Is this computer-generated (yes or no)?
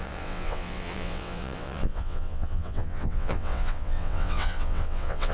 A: yes